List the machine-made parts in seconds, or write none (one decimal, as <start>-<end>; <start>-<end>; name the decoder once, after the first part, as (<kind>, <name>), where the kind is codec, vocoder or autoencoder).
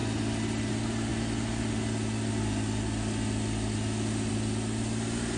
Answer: none